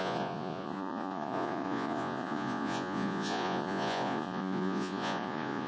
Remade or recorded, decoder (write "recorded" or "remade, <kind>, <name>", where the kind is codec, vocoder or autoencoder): remade, vocoder, Vocos